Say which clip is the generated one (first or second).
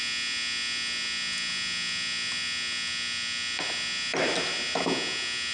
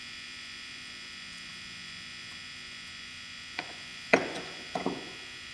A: second